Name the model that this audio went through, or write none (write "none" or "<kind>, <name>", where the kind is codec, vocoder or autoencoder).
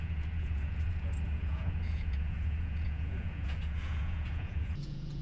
vocoder, Vocos